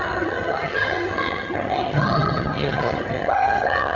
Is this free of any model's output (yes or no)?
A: no